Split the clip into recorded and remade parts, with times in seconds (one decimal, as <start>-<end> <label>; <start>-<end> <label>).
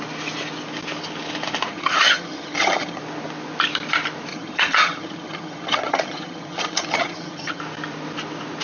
0.0-1.7 recorded; 1.7-3.0 remade; 3.0-4.3 recorded; 4.3-7.6 remade; 7.6-8.6 recorded